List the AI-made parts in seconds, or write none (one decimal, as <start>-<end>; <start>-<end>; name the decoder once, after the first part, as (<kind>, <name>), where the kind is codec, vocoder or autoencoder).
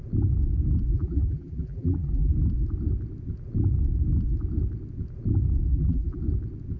0.9-2.3 (vocoder, BigVGAN v2); 5.7-6.2